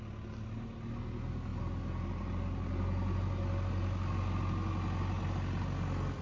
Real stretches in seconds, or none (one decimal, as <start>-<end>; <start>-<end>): 0.0-6.2